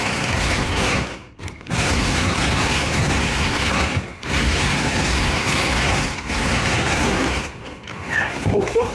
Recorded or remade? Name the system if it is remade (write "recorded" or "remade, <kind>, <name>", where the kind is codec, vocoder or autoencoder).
remade, codec, SNAC